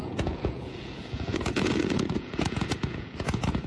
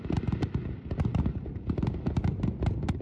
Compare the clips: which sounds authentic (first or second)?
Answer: second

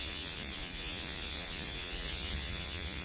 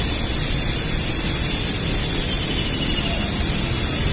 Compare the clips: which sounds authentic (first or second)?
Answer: second